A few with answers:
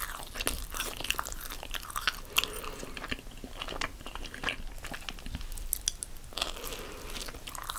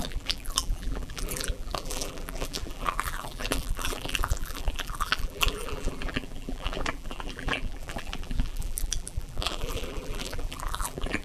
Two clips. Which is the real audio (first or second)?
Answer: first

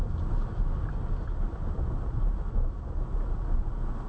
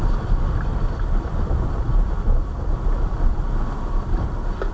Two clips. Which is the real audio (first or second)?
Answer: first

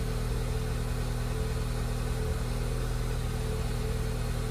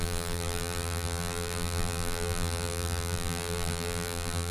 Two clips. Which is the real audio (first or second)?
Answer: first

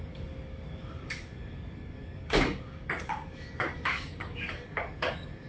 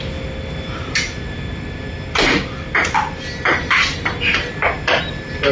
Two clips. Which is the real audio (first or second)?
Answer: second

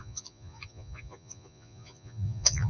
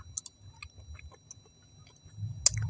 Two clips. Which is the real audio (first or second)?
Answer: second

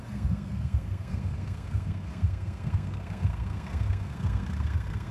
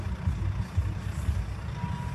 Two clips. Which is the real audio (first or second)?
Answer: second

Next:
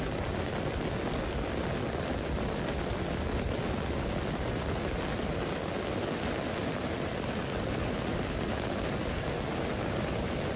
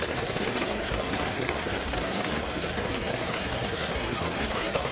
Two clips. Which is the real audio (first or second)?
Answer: first